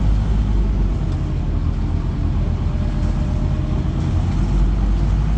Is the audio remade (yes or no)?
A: no